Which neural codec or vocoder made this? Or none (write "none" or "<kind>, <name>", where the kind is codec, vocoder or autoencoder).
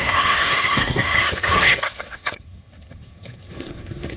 codec, SNAC